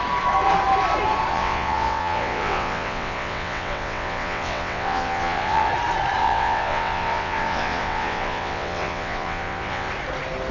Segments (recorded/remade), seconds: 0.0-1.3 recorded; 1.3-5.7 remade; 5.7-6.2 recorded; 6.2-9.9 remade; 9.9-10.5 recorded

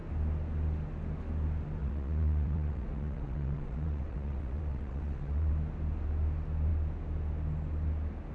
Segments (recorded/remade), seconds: 0.0-1.8 recorded; 1.8-5.5 remade; 5.5-8.3 recorded

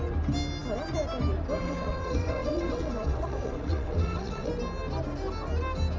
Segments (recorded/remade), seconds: 0.0-1.6 recorded; 1.6-4.5 remade; 4.5-6.0 recorded